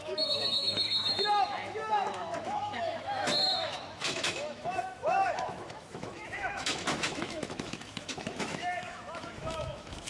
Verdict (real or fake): fake